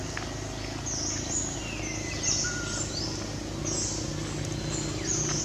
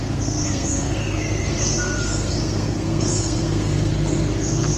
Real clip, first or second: first